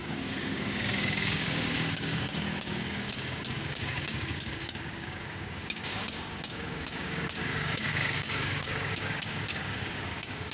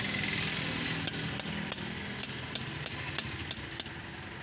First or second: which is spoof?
first